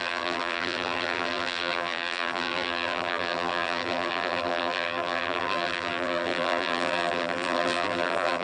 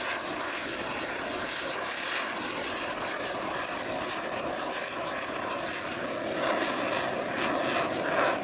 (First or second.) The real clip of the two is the second